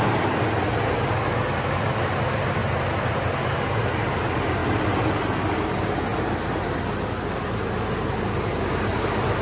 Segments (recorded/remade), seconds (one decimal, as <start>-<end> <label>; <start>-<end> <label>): 0.0-9.4 recorded